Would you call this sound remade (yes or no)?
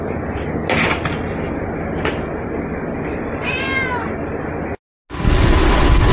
no